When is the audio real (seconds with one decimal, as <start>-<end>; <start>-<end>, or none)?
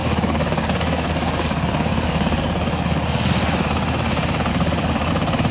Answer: 3.3-4.5; 5.1-5.5